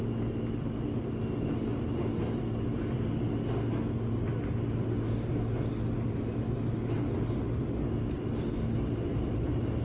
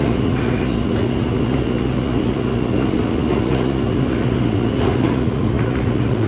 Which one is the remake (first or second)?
second